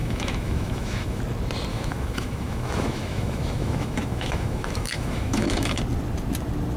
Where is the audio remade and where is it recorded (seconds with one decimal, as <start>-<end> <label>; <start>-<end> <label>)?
0.0-1.2 remade; 1.2-1.7 recorded; 1.7-5.8 remade; 5.8-6.8 recorded